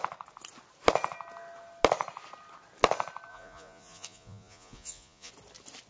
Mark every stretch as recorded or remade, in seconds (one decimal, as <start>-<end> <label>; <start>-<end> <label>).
0.0-3.3 recorded; 3.3-5.3 remade; 5.3-5.9 recorded